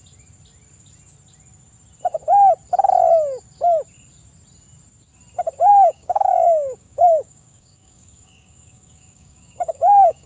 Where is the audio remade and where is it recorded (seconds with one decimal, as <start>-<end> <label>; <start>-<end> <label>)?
0.0-5.7 recorded; 5.7-10.3 remade